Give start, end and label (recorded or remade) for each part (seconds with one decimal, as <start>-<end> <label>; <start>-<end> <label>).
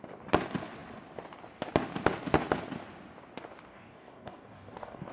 0.0-3.7 recorded; 3.7-5.1 remade